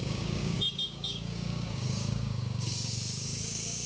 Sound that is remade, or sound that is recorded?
remade